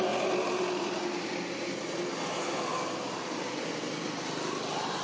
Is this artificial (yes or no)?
no